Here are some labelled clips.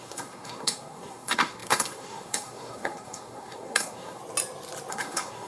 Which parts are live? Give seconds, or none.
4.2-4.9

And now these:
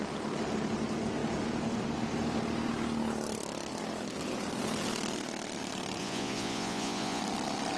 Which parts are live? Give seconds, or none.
0.0-6.0; 7.2-7.8

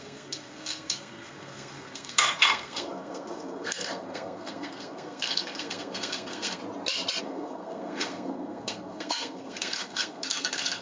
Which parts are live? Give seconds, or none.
6.6-7.2

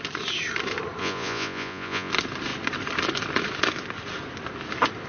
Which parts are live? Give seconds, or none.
0.0-1.0; 2.1-5.1

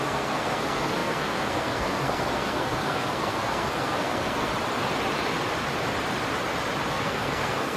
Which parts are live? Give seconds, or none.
4.5-6.9

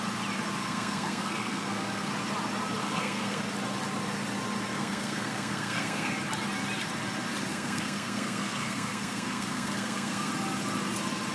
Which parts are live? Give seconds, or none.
0.0-0.6; 2.1-2.8; 3.4-4.7; 6.1-7.5; 10.3-11.3

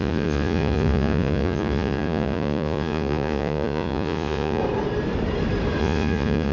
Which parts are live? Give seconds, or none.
4.6-5.8